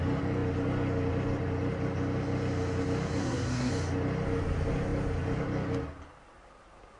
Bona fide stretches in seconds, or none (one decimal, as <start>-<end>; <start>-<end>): 0.0-3.2; 3.7-7.0